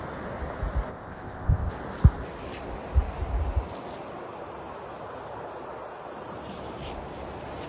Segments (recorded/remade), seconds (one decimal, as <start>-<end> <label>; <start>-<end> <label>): 0.0-0.9 recorded; 0.9-1.7 remade; 1.7-7.7 recorded